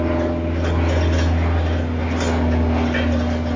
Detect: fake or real real